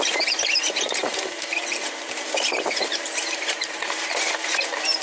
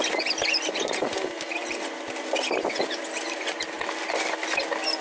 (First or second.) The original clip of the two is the second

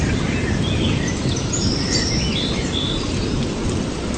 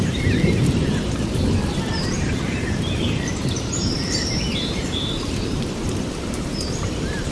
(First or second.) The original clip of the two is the first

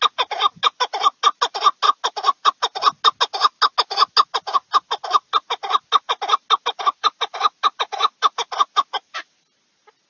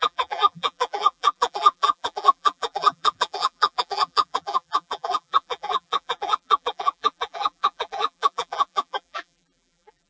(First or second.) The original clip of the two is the first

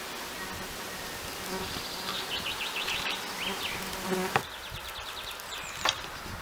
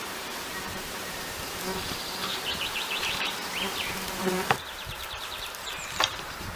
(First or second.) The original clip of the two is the first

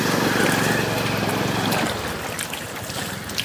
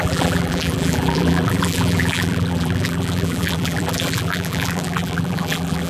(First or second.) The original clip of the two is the first